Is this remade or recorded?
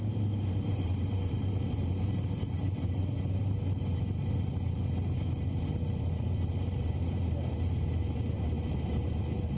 remade